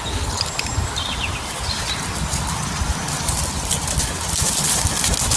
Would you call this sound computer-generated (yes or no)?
no